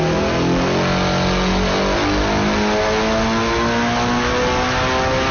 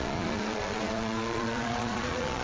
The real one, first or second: first